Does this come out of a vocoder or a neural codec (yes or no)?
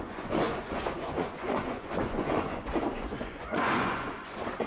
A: yes